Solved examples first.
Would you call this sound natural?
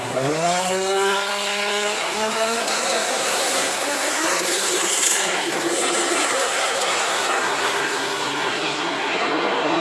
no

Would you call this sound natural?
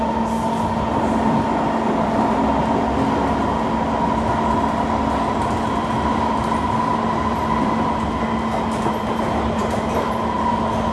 yes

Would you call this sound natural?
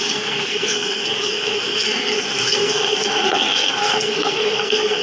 no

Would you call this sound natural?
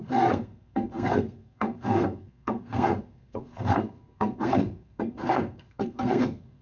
no